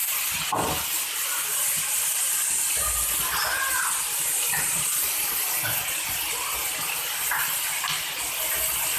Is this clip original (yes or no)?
yes